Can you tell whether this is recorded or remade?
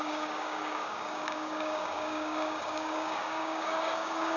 remade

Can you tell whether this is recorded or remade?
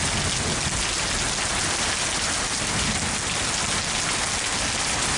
recorded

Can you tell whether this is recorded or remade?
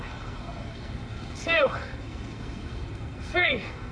remade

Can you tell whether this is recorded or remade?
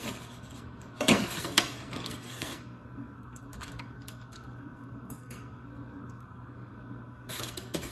remade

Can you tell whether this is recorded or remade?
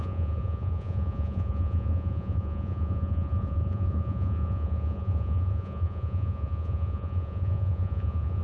remade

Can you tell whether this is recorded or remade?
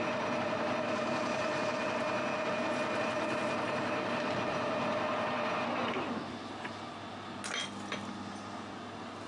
recorded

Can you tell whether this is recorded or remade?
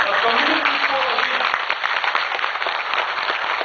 recorded